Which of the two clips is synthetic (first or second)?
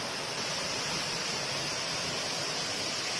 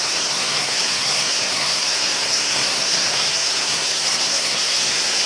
second